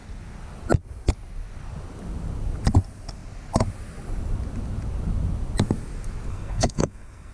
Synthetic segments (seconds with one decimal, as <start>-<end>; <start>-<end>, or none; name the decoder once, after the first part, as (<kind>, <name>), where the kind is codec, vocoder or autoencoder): 6.3-7.3 (codec, SNAC)

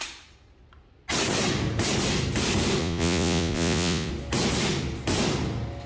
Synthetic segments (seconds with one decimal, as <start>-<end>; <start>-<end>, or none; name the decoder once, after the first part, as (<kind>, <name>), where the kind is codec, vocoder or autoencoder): 2.8-4.1 (vocoder, Vocos)

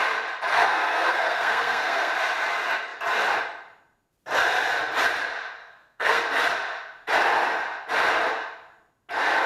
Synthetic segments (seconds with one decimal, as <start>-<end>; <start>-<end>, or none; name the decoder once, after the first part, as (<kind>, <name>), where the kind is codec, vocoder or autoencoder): 0.5-2.1 (codec, SNAC); 5.6-6.2

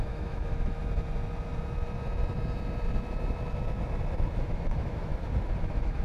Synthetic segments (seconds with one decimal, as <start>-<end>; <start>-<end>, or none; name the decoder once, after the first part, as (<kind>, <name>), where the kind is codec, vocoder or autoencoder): 0.0-0.8 (autoencoder, DAC-VAE); 4.4-5.1; 5.6-6.0